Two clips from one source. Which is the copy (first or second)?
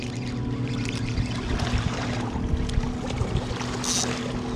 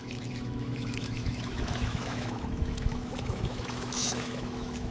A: second